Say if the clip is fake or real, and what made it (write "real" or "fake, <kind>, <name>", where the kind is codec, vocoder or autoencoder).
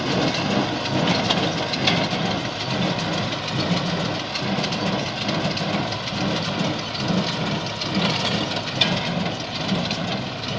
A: real